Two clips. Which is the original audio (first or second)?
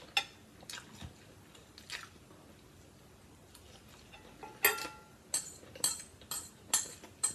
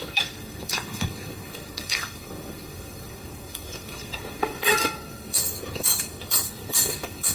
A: first